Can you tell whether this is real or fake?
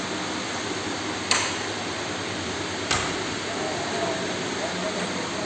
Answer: fake